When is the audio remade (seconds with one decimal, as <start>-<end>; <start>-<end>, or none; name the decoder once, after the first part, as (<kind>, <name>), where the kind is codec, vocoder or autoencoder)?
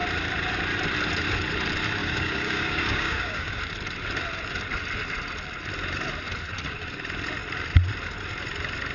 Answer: 2.0-3.6 (codec, DAC)